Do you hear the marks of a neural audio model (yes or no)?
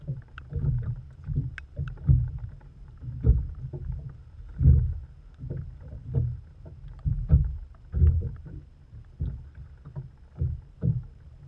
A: no